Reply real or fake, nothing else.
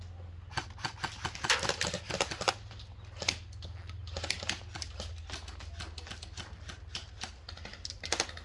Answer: real